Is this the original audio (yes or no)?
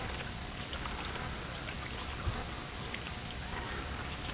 yes